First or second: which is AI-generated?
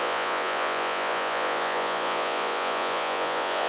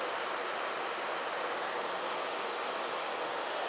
first